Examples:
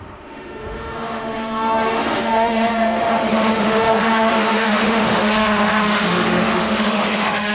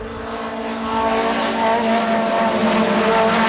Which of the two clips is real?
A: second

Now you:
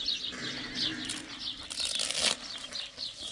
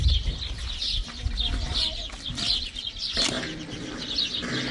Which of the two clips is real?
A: second